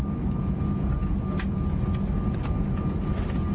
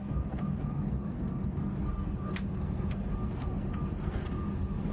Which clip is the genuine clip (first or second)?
first